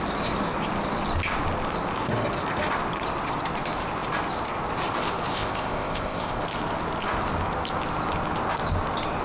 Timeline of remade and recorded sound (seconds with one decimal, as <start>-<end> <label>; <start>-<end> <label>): 0.0-5.3 recorded; 5.3-6.4 remade; 6.4-9.2 recorded